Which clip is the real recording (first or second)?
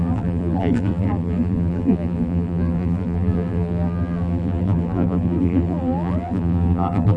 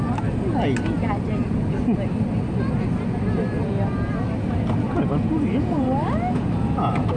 second